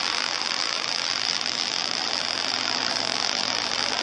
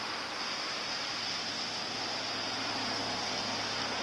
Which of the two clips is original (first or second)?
second